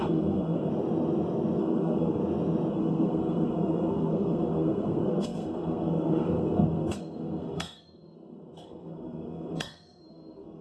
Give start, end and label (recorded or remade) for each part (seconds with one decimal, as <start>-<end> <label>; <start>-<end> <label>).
0.0-0.7 remade; 0.7-1.6 recorded; 1.6-2.2 remade; 2.2-2.7 recorded; 2.7-10.6 remade